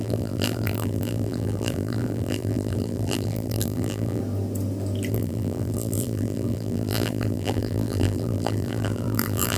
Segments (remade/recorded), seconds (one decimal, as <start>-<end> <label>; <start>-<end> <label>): 0.0-4.2 remade; 4.2-5.1 recorded; 5.1-9.6 remade

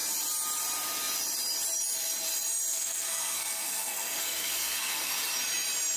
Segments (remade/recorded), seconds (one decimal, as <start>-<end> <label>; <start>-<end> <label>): 0.0-2.7 recorded; 2.7-5.1 remade; 5.1-6.0 recorded

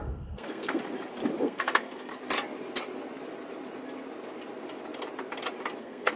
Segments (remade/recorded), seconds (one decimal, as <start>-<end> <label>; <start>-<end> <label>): 0.0-0.8 remade; 0.8-1.4 recorded; 1.4-2.1 remade; 2.1-5.8 recorded; 5.8-6.2 remade